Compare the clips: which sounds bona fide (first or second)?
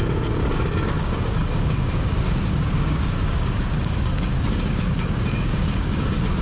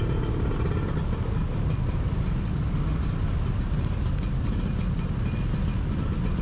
second